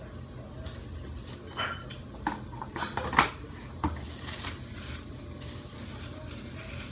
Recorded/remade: recorded